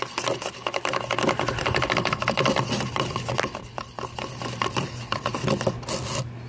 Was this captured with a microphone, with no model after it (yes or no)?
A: yes